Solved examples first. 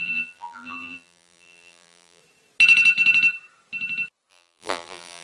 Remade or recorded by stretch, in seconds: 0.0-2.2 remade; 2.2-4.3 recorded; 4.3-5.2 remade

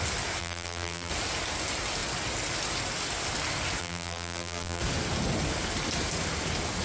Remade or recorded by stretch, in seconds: 0.0-0.4 recorded; 0.4-1.1 remade; 1.1-3.8 recorded; 3.8-4.8 remade; 4.8-6.8 recorded

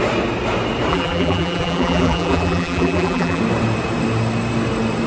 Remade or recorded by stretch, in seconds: 0.0-0.9 recorded; 0.9-3.4 remade; 3.4-5.1 recorded

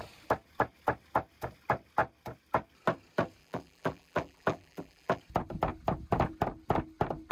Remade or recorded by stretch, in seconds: 0.0-3.4 recorded; 3.4-5.2 remade; 5.2-7.3 recorded

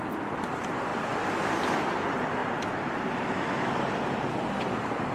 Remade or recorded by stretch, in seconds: 0.0-5.1 recorded

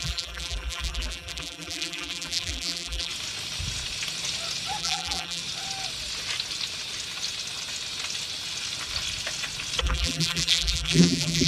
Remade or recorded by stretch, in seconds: 0.0-3.1 remade; 3.1-4.8 recorded; 4.8-5.4 remade; 5.4-9.8 recorded; 9.8-11.5 remade

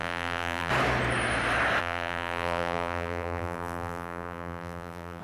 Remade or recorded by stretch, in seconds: 0.0-0.7 remade; 0.7-1.8 recorded; 1.8-5.2 remade